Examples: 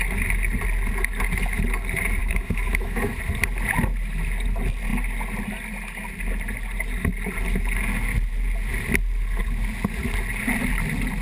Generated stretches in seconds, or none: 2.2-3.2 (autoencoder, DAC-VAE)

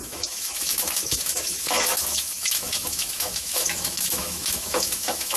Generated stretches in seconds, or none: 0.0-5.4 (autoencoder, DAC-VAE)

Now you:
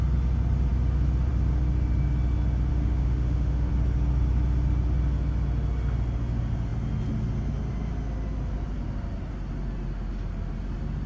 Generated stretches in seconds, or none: 2.7-3.7 (autoencoder, DAC-VAE)

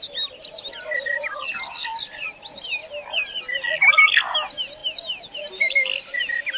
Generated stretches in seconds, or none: none

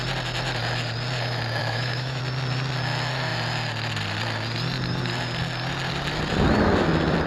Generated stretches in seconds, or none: 1.6-2.2 (autoencoder, DAC-VAE)